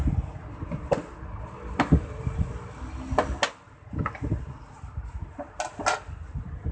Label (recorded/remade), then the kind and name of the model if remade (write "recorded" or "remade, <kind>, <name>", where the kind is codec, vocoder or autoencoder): recorded